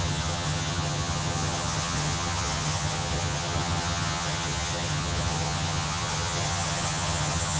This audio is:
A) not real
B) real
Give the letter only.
A